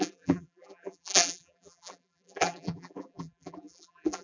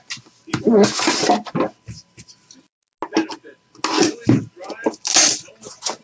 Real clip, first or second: second